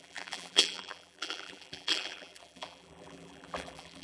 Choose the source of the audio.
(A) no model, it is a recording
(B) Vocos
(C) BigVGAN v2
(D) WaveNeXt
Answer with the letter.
C